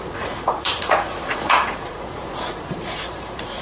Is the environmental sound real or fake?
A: fake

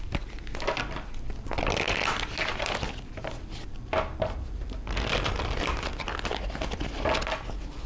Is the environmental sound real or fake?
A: real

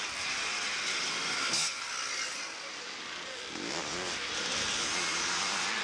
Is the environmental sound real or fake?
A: real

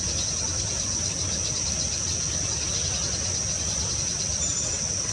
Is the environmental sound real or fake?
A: real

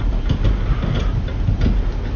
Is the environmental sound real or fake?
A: real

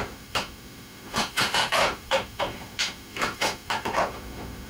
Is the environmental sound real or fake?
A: fake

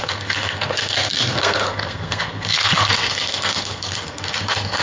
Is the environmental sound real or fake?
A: fake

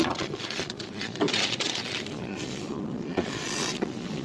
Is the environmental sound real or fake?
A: fake